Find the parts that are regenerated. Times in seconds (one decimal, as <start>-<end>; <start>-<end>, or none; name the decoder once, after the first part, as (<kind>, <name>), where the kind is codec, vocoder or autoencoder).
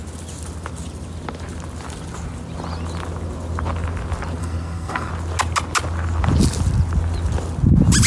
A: 4.4-5.1 (codec, SNAC)